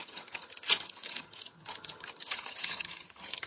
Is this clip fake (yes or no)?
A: yes